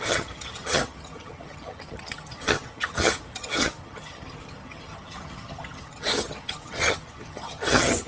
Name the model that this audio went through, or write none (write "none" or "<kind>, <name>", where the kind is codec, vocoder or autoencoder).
vocoder, HiFi-GAN